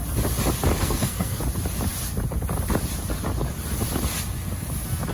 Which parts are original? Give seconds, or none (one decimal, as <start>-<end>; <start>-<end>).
0.0-0.8; 1.4-5.1